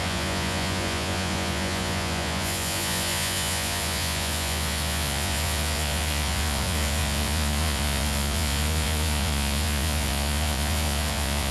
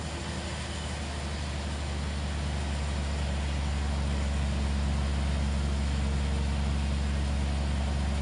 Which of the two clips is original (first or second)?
second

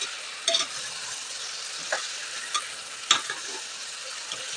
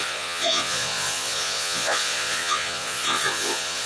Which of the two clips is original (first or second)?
first